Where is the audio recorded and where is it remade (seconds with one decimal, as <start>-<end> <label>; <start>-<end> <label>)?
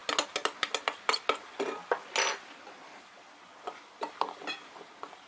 0.0-5.3 recorded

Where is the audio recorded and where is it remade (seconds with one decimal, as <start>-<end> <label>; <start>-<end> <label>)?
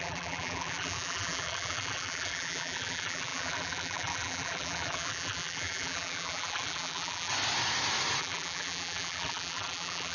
0.0-7.3 remade; 7.3-8.2 recorded; 8.2-10.1 remade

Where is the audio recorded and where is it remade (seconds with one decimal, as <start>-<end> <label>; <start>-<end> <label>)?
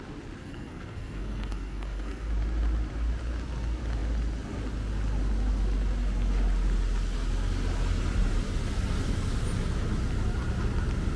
0.0-0.4 recorded; 0.4-2.3 remade; 2.3-11.2 recorded